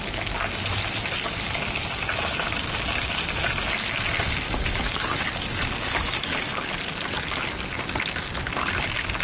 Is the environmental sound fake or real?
real